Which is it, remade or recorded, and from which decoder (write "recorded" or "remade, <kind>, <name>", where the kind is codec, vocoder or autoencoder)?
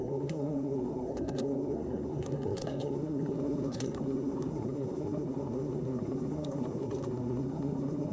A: remade, codec, SNAC